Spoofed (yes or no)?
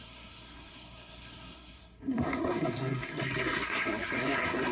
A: yes